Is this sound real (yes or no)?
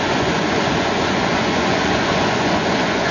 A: no